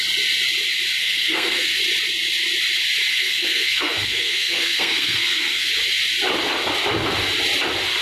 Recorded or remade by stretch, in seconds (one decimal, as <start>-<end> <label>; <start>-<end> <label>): 0.0-1.0 recorded; 1.0-1.8 remade; 1.8-3.1 recorded; 3.1-5.7 remade; 5.7-8.0 recorded